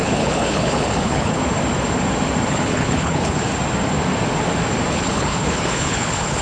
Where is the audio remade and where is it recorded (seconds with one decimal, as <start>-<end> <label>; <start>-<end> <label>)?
0.0-1.4 remade; 1.4-2.5 recorded; 2.5-3.5 remade; 3.5-4.9 recorded; 4.9-6.4 remade

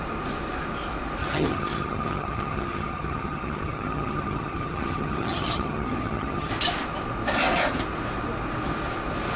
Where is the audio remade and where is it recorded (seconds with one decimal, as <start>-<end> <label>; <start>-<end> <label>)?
0.0-1.2 recorded; 1.2-6.5 remade; 6.5-9.4 recorded

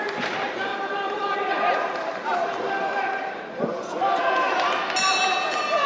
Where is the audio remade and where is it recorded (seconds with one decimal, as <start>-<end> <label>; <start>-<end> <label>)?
0.0-0.7 recorded; 0.7-4.0 remade; 4.0-5.9 recorded

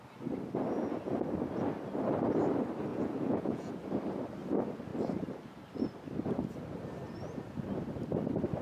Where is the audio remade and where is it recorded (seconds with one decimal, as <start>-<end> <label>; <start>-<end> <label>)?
0.0-2.9 recorded; 2.9-3.7 remade; 3.7-8.6 recorded